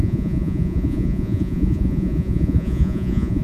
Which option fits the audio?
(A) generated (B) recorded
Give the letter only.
A